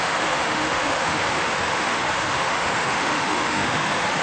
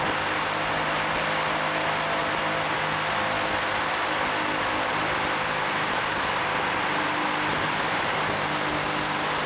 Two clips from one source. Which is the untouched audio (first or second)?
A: second